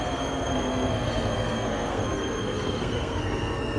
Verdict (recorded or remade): remade